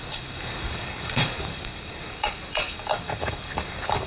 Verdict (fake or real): fake